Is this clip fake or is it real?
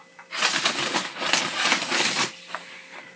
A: real